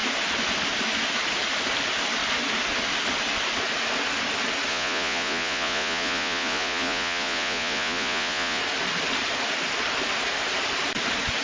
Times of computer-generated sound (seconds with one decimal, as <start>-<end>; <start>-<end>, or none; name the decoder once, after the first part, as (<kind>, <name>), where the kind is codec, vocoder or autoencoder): 4.7-8.6 (vocoder, Vocos)